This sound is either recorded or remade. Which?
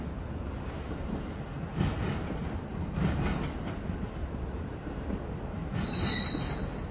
recorded